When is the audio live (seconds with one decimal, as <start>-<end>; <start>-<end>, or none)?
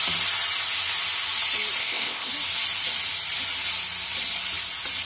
0.0-1.8; 2.3-5.1